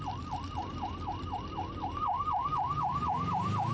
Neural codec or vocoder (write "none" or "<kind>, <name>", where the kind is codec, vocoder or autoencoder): vocoder, BigVGAN v2